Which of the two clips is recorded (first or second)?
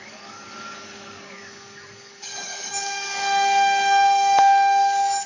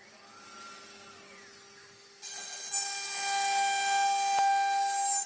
second